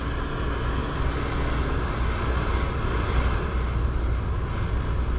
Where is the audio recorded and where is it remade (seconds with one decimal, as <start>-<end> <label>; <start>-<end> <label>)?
0.0-5.2 recorded